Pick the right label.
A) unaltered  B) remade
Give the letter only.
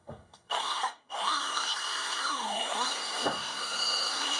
B